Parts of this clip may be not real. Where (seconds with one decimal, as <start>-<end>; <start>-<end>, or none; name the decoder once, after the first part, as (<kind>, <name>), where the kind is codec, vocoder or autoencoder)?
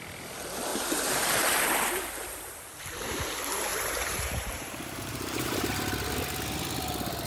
0.7-2.5 (vocoder, BigVGAN v2); 3.7-5.7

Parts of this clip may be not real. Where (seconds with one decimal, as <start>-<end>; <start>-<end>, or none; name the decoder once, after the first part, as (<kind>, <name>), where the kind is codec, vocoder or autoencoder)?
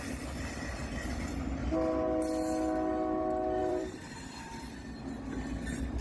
3.6-4.6 (vocoder, BigVGAN v2)